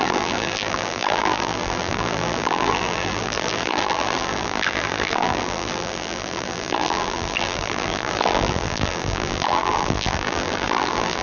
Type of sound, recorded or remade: remade